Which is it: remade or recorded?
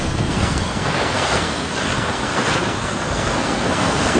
remade